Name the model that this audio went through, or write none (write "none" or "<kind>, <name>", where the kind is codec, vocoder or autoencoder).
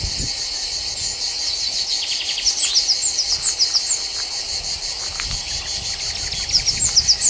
none